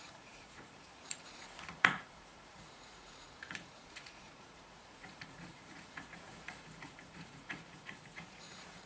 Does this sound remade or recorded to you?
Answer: remade